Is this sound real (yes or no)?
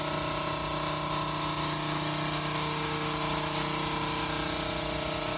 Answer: yes